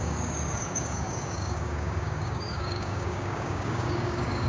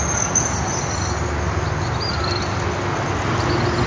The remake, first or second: first